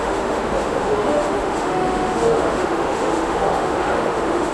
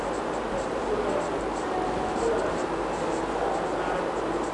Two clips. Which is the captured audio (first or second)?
second